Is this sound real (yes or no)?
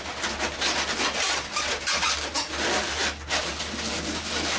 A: yes